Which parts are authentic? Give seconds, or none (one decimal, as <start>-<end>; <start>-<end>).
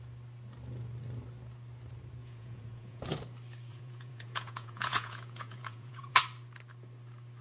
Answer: 0.0-2.2; 3.0-3.7; 6.2-7.4